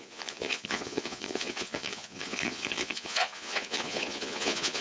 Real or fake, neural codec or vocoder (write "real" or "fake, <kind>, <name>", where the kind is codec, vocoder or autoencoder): fake, vocoder, Vocos